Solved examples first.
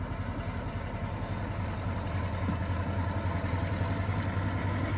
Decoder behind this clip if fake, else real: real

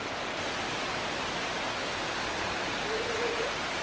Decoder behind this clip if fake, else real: real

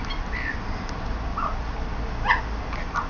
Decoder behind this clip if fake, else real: real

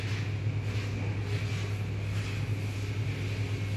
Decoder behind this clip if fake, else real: real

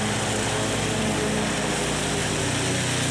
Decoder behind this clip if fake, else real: real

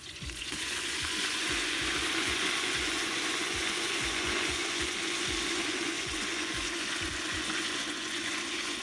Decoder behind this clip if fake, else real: fake, vocoder, Vocos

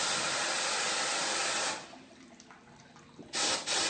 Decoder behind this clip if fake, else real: real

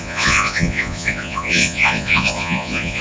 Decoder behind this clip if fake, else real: fake, vocoder, Vocos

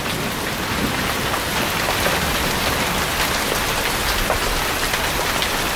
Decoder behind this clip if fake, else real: real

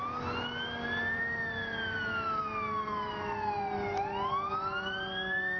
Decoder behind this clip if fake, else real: real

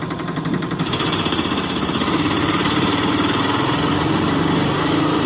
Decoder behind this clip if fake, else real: fake, vocoder, BigVGAN v2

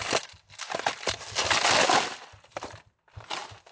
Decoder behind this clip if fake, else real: real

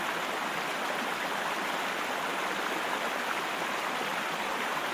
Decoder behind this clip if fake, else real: real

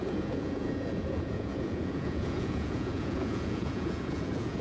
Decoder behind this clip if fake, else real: fake, vocoder, Vocos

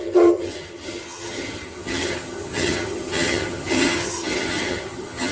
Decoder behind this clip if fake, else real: fake, vocoder, HiFi-GAN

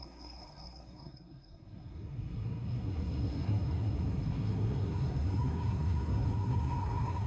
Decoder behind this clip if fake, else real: fake, codec, SNAC